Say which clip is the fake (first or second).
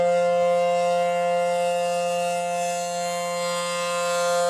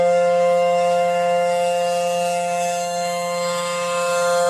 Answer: second